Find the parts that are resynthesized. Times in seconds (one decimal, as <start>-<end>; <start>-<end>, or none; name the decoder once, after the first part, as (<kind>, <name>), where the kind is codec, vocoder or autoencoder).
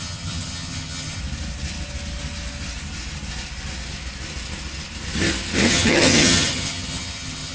0.0-1.2 (vocoder, HiFi-GAN); 5.7-7.5